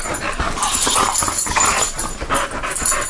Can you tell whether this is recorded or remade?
recorded